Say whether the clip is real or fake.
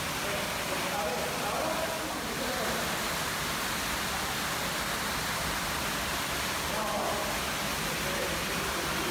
real